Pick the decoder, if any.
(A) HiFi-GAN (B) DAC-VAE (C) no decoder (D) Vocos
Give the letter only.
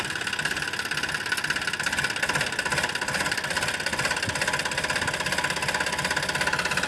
C